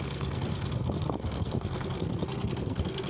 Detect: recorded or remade remade